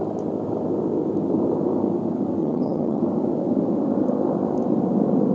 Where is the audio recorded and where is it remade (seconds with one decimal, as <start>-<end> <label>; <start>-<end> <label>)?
0.0-2.4 recorded; 2.4-3.0 remade; 3.0-5.3 recorded